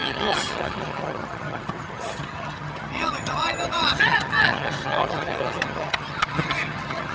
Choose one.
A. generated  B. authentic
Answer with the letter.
A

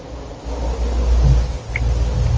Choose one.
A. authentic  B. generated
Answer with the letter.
A